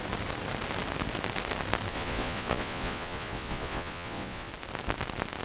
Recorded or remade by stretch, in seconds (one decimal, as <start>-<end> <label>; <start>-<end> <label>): 0.0-1.9 recorded; 1.9-4.5 remade; 4.5-5.4 recorded